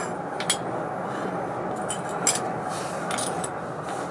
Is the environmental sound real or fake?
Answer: real